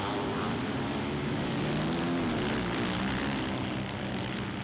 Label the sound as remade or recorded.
recorded